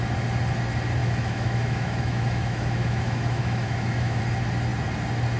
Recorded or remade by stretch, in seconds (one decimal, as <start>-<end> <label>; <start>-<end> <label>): 0.0-1.0 recorded; 1.0-4.2 remade; 4.2-5.4 recorded